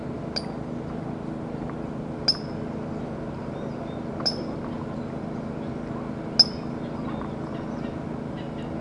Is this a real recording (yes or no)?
yes